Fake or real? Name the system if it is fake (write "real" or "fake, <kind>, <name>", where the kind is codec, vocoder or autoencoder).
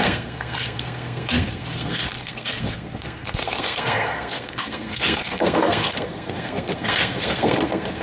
fake, codec, SNAC